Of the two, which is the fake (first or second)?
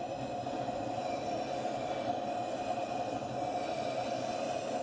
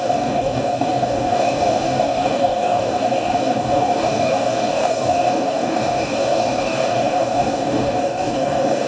second